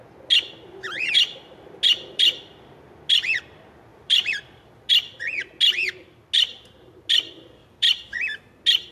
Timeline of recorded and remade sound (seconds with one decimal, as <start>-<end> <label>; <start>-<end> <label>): 0.0-3.9 recorded; 3.9-4.9 remade; 4.9-7.6 recorded; 7.6-8.5 remade; 8.5-8.9 recorded